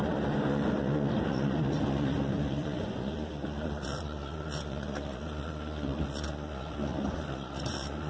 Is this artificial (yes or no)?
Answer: yes